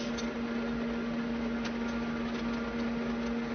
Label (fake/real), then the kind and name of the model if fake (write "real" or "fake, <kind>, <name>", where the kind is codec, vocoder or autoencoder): real